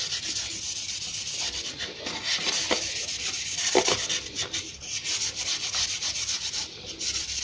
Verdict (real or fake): real